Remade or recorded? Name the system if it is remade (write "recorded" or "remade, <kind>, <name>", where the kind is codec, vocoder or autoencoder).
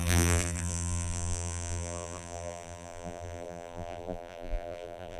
remade, vocoder, BigVGAN v2